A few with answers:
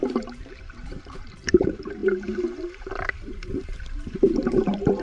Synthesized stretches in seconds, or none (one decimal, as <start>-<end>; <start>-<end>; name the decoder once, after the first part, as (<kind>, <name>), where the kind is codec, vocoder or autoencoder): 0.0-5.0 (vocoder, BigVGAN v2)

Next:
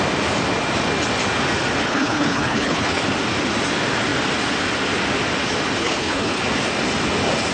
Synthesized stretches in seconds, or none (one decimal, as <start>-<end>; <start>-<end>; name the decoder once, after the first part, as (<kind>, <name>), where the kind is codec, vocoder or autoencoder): 1.9-3.0 (codec, HILCodec); 5.8-6.4

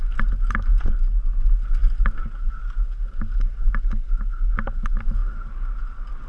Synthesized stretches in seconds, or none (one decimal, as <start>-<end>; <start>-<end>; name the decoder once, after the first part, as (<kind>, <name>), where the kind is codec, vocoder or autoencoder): none

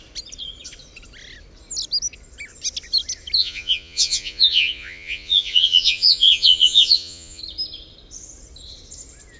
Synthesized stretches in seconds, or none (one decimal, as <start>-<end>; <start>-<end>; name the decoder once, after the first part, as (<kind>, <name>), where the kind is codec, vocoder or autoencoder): 3.4-7.4 (vocoder, Vocos)

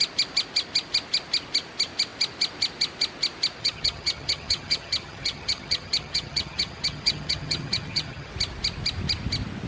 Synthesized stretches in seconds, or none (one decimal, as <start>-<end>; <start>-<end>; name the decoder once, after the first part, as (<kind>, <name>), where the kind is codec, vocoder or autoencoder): 3.6-8.3 (vocoder, HiFi-GAN)

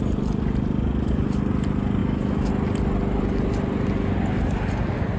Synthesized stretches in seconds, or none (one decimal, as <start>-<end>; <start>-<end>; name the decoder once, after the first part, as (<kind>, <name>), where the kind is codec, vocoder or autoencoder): 2.0-2.5 (autoencoder, DAC-VAE)

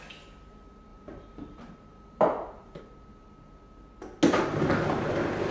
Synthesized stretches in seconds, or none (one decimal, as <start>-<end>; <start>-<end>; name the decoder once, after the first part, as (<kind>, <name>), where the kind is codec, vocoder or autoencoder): 0.9-2.8 (vocoder, BigVGAN v2); 4.5-5.5

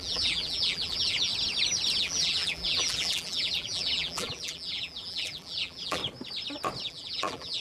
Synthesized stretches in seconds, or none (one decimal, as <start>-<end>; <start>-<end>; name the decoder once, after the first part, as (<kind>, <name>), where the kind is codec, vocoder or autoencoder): 0.0-1.3 (vocoder, BigVGAN v2); 2.0-6.0; 6.9-7.6